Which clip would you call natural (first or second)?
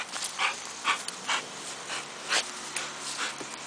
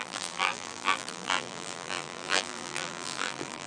first